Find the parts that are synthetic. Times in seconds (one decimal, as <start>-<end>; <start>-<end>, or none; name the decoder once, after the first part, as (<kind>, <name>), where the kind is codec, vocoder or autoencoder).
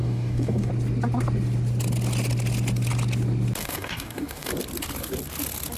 0.0-0.7 (codec, DAC); 3.6-4.5